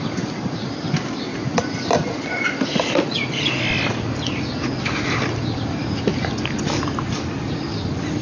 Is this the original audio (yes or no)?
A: yes